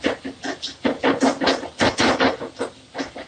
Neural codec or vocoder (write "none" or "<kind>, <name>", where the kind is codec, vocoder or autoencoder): none